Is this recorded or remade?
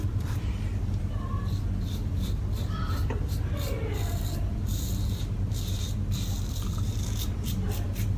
remade